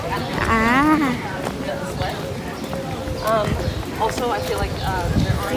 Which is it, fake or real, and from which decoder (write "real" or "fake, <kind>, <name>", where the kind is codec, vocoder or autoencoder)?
real